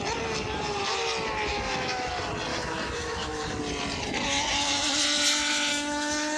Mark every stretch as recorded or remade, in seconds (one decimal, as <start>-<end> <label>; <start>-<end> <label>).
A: 0.0-1.5 recorded; 1.5-2.1 remade; 2.1-2.5 recorded; 2.5-3.6 remade; 3.6-5.7 recorded; 5.7-6.4 remade